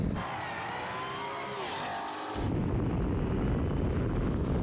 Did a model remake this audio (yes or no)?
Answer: no